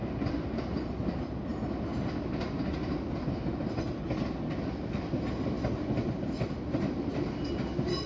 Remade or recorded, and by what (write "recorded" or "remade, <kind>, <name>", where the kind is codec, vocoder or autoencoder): recorded